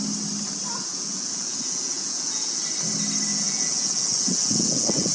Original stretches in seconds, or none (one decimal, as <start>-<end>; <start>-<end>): 0.0-0.9; 2.6-3.3